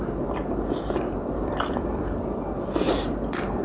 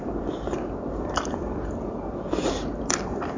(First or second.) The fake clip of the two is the second